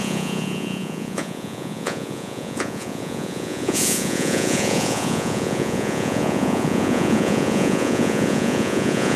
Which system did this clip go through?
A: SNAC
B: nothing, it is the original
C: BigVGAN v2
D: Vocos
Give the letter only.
D